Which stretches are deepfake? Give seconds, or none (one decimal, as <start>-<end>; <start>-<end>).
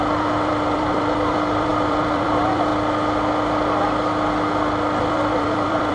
0.0-2.7; 5.0-5.9